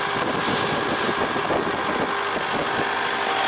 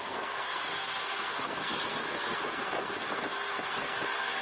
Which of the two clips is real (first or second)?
first